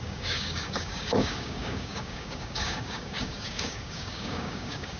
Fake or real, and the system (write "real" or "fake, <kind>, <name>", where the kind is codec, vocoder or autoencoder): fake, codec, DAC